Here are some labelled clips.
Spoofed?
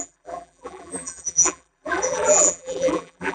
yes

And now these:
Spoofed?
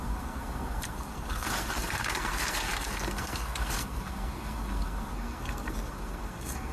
yes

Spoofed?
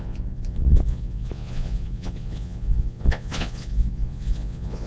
yes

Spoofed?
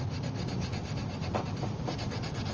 no